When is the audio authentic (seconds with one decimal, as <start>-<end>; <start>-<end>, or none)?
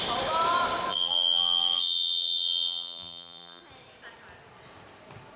0.0-0.9; 3.6-5.4